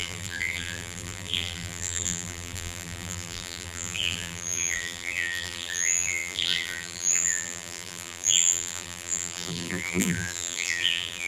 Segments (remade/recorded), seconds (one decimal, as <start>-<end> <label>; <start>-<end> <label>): 0.0-11.3 remade